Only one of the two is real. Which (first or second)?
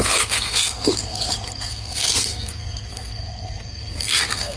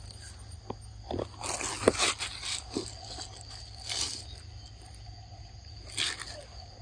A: second